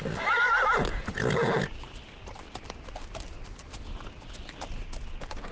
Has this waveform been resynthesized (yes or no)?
no